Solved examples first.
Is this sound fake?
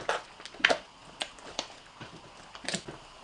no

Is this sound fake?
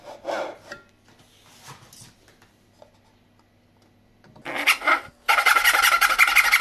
no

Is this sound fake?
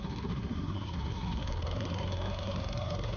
yes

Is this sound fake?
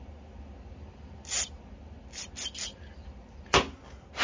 no